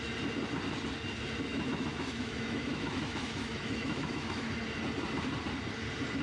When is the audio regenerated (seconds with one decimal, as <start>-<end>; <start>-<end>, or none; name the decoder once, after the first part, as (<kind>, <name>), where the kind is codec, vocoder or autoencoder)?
1.5-4.6 (autoencoder, DAC-VAE)